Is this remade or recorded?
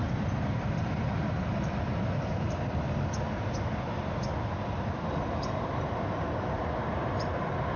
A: remade